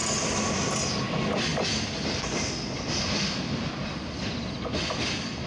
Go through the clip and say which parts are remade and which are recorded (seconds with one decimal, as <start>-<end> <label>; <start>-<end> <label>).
0.0-5.5 recorded